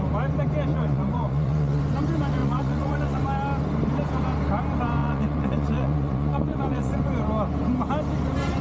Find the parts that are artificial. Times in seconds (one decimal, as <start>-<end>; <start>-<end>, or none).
0.7-1.8; 2.4-3.2; 5.0-7.0